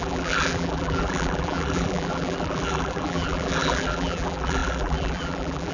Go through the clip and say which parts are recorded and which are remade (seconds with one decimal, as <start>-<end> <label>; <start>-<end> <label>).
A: 0.0-5.7 remade